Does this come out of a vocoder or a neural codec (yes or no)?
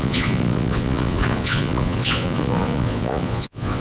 yes